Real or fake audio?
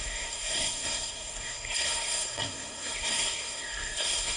fake